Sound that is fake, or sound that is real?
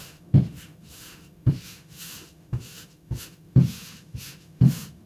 fake